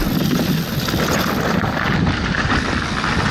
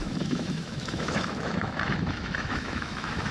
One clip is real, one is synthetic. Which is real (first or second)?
first